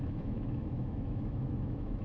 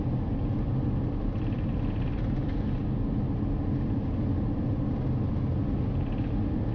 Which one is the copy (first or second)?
first